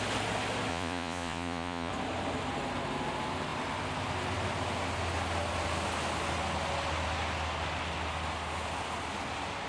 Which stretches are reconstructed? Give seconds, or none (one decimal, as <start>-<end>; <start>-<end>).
0.7-1.9